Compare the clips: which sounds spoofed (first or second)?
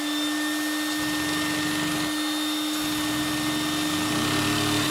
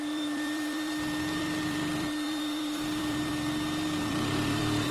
second